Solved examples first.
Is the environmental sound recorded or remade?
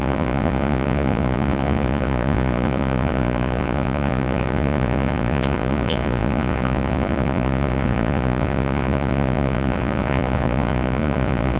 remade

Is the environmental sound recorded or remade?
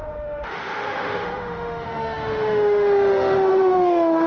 remade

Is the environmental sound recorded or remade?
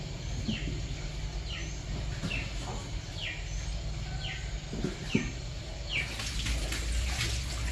recorded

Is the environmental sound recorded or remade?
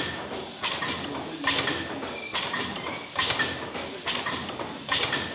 recorded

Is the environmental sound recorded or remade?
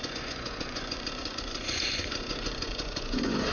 remade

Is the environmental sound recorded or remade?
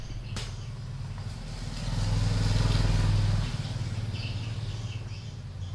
recorded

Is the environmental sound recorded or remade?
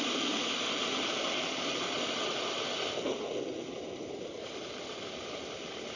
recorded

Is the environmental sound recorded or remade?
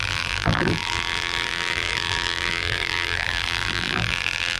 remade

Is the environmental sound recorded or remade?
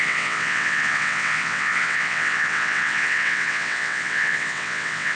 remade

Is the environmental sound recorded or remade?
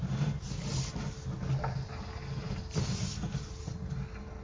recorded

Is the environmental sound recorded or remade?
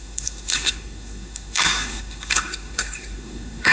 remade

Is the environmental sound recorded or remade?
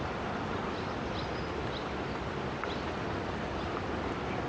recorded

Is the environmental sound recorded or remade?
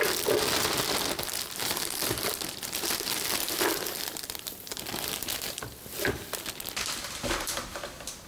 recorded